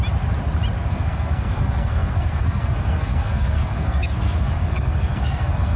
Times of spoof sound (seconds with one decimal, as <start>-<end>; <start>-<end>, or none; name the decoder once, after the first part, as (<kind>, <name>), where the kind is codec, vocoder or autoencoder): 0.9-5.8 (codec, SNAC)